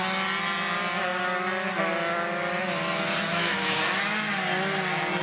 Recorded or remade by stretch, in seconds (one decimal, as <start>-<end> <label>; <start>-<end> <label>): 0.0-3.3 recorded; 3.3-3.8 remade; 3.8-5.2 recorded